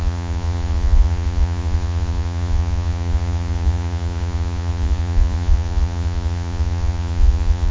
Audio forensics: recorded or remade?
remade